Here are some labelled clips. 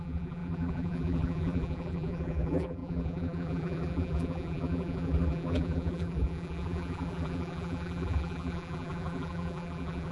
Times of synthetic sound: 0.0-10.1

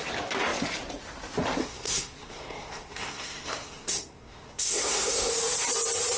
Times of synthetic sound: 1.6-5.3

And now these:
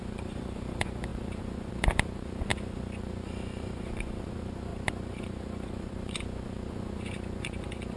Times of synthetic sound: 0.0-8.0

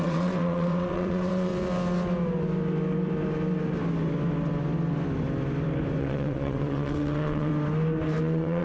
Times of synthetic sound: 0.0-1.5; 6.0-7.5; 8.2-8.6